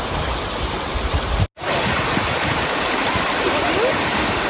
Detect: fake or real real